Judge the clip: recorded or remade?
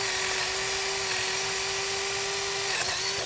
recorded